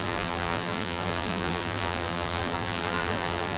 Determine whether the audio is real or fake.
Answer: fake